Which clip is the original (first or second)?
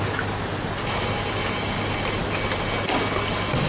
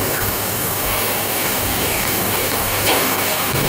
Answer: first